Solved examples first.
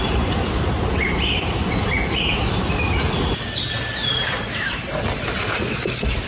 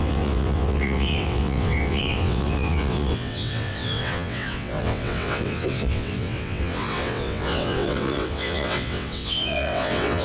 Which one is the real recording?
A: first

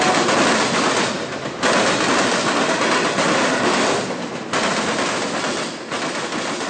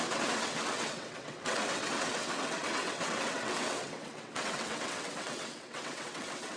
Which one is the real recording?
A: first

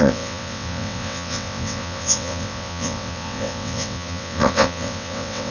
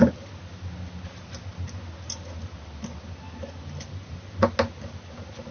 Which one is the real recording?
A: second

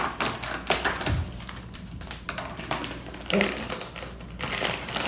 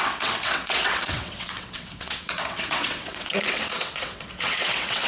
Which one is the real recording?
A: first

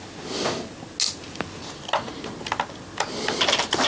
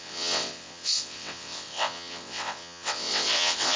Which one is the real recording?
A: first